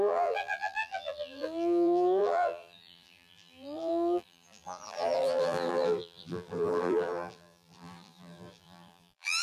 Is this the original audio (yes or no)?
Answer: no